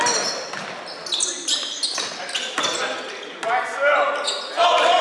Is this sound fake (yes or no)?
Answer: no